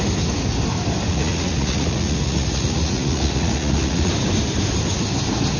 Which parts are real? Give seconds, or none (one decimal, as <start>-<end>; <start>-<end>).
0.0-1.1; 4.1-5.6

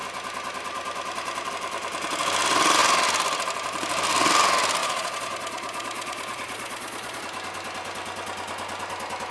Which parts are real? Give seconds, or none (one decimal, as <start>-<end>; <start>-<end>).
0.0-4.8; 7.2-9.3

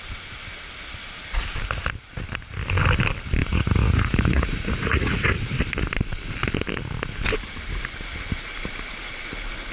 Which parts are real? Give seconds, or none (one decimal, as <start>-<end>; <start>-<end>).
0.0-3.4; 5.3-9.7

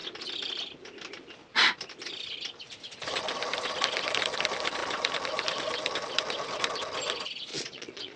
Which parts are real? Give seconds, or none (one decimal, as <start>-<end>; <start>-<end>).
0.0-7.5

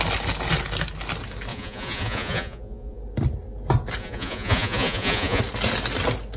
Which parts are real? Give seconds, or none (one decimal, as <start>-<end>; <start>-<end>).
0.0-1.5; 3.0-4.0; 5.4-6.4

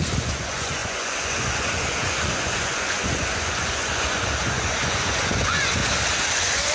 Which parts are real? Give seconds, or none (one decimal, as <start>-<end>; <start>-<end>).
5.8-6.3